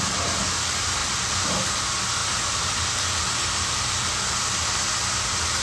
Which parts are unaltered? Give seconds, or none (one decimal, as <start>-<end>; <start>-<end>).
0.0-1.0; 1.6-2.2